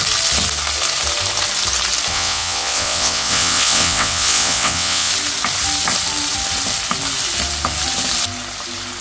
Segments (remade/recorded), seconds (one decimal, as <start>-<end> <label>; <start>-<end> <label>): 0.0-2.1 recorded; 2.1-5.1 remade; 5.1-9.0 recorded